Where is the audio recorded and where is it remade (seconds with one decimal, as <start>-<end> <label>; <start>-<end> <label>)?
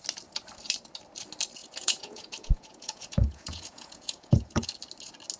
0.0-1.6 recorded; 1.6-4.7 remade; 4.7-5.4 recorded